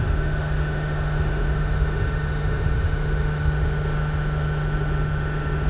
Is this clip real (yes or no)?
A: no